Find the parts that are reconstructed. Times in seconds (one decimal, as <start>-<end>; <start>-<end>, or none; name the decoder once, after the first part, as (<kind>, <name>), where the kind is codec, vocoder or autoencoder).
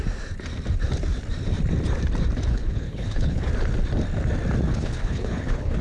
2.5-3.5 (codec, HILCodec); 4.7-5.8